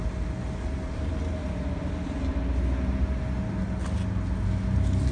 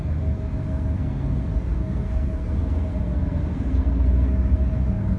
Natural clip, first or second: first